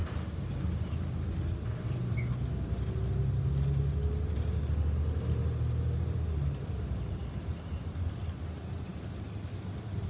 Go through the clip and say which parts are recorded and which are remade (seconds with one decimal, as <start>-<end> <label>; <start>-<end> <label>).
0.0-0.8 recorded; 0.8-2.0 remade; 2.0-6.9 recorded; 6.9-8.9 remade; 8.9-9.6 recorded; 9.6-10.1 remade